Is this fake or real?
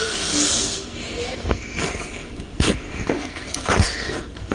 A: fake